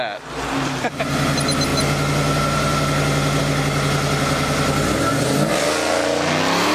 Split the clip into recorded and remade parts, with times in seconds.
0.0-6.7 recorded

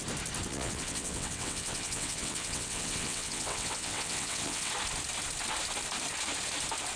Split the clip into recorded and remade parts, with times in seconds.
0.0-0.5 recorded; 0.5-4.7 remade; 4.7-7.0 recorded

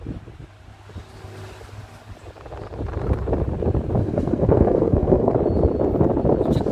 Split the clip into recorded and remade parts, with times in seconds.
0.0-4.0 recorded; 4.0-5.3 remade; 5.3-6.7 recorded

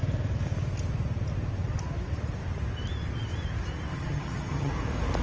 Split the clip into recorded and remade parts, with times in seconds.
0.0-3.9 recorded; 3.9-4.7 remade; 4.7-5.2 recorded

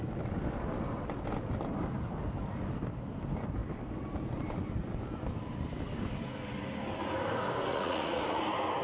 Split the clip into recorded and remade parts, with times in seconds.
0.0-7.7 recorded; 7.7-8.4 remade; 8.4-8.8 recorded